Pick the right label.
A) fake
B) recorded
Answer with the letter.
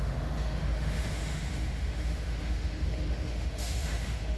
A